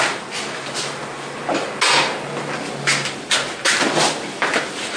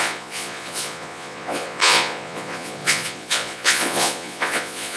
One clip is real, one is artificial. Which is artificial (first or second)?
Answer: second